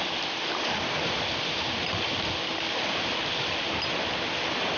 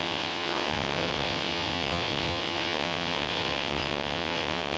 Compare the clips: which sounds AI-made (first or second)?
second